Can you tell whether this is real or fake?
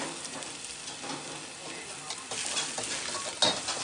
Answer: real